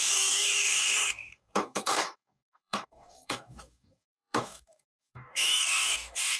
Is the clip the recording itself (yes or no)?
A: no